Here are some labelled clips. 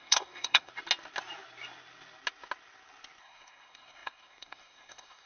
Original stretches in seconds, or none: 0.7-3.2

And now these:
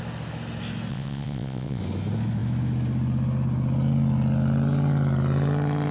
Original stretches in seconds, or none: 0.0-0.9; 1.8-5.9